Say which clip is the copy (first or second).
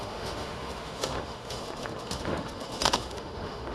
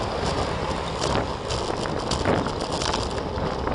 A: first